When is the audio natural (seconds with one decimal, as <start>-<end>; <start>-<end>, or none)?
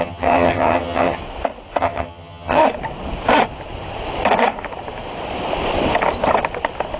1.2-1.8; 2.6-7.0